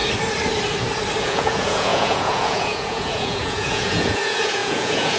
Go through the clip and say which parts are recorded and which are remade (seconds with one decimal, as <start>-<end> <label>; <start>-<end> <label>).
0.0-1.2 recorded; 1.2-5.2 remade